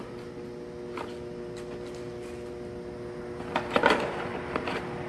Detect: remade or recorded recorded